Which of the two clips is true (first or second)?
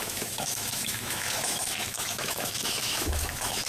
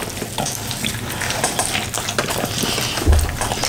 second